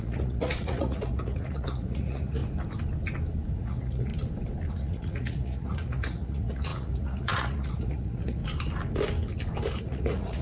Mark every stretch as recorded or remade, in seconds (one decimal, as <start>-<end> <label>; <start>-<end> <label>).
0.0-2.4 remade; 2.4-3.5 recorded; 3.5-4.1 remade; 4.1-4.7 recorded; 4.7-8.4 remade; 8.4-9.8 recorded; 9.8-10.4 remade